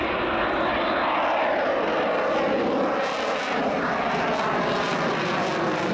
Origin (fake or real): real